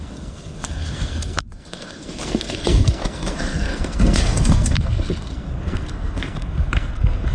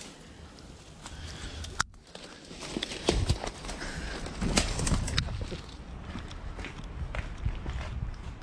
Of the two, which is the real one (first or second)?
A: second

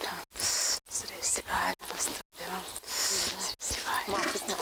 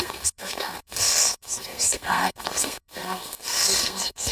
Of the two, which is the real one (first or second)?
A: first